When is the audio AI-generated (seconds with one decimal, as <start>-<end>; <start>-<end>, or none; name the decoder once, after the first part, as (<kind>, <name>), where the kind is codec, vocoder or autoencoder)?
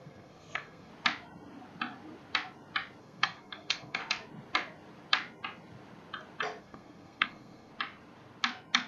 0.0-0.9 (codec, SNAC); 3.0-4.0; 6.6-7.7